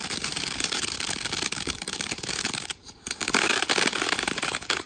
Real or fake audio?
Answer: fake